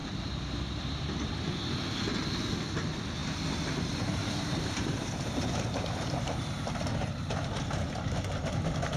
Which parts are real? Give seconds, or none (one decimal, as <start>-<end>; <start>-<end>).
1.3-3.2; 8.2-9.0